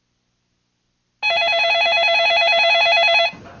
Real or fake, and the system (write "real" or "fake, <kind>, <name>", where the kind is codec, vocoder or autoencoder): real